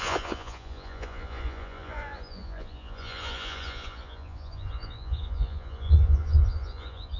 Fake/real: fake